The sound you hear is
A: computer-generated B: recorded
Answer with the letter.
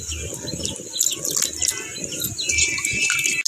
B